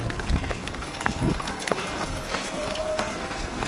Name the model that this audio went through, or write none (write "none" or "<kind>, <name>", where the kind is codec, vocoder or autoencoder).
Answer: codec, SNAC